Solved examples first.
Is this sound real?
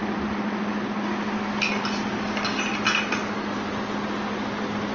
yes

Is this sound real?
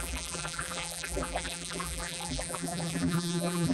no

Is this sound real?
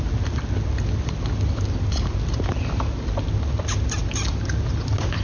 yes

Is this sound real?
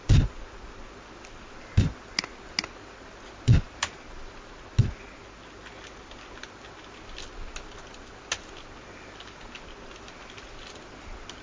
yes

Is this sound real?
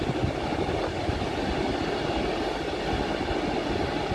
yes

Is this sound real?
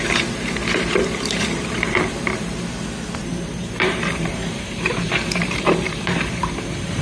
no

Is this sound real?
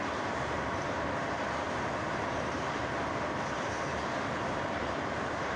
no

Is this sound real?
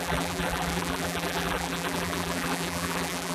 no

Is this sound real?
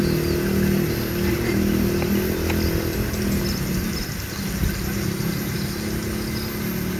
yes